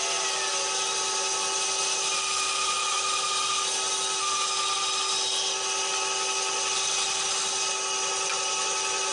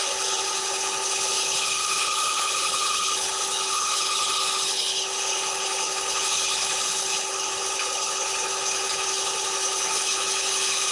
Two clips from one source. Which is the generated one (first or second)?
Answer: second